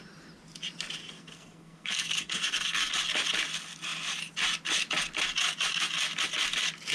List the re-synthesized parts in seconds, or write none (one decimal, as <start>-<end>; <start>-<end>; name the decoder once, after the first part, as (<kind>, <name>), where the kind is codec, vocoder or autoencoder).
1.0-2.9 (codec, SNAC)